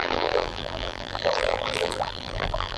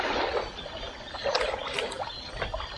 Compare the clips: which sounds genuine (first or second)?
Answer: second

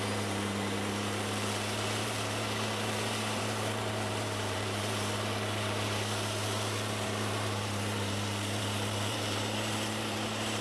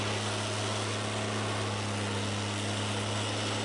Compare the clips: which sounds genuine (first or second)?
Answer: second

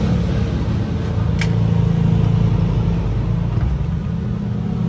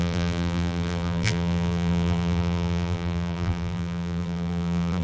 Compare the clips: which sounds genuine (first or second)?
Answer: first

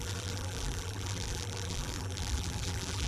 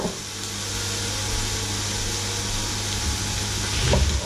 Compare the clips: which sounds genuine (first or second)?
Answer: second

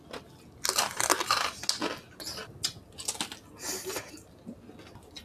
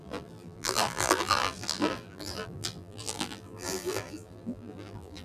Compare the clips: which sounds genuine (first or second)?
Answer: first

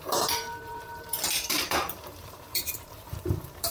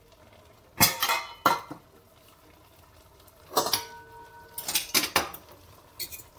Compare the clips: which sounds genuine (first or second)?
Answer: second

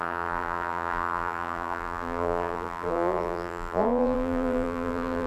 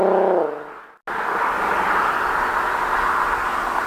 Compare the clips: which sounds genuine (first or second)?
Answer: second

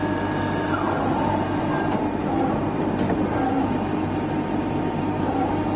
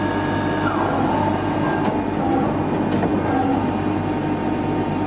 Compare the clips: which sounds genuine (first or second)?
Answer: second